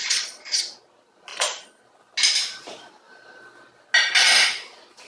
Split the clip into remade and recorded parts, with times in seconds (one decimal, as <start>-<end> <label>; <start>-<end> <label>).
0.0-0.6 remade; 0.6-1.3 recorded; 1.3-1.8 remade; 1.8-5.1 recorded